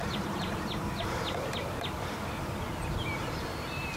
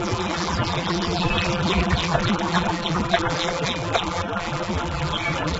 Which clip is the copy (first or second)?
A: second